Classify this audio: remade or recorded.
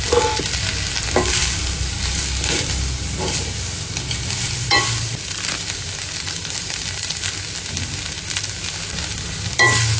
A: recorded